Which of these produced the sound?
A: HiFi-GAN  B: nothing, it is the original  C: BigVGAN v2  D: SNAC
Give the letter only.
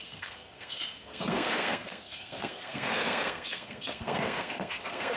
D